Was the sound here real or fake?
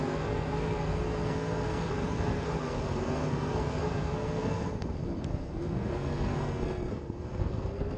fake